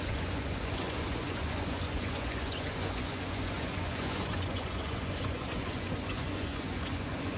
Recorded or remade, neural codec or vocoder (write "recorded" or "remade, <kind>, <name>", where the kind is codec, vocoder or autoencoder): remade, vocoder, Vocos